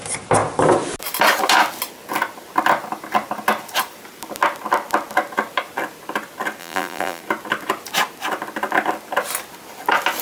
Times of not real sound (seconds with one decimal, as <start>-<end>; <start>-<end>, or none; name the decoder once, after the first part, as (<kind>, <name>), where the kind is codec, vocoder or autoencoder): 6.6-7.2 (vocoder, BigVGAN v2)